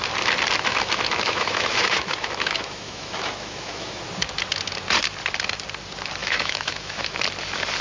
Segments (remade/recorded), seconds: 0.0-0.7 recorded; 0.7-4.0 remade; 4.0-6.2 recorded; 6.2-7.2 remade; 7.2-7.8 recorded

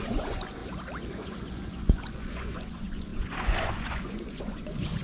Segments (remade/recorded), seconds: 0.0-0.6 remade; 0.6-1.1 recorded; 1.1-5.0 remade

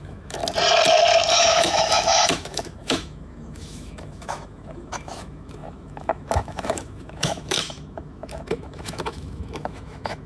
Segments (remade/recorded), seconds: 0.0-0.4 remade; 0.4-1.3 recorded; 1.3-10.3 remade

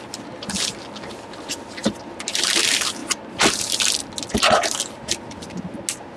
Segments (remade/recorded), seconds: 0.0-6.2 recorded

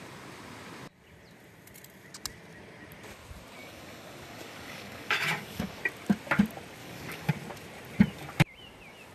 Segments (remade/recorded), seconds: 0.0-3.6 recorded; 3.6-5.8 remade; 5.8-6.8 recorded; 6.8-7.3 remade; 7.3-9.1 recorded

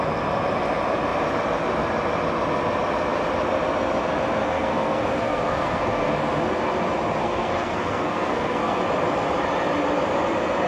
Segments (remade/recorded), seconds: 0.0-4.4 recorded; 4.4-6.1 remade; 6.1-7.2 recorded; 7.2-8.8 remade; 8.8-10.7 recorded

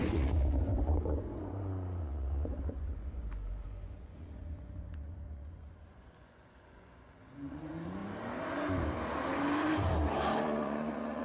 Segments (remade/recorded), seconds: 0.0-8.0 remade; 8.0-10.4 recorded; 10.4-11.2 remade

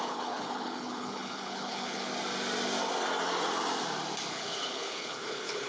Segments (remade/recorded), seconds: 0.0-2.1 remade; 2.1-4.3 recorded; 4.3-5.7 remade